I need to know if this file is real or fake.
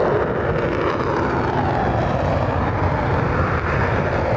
real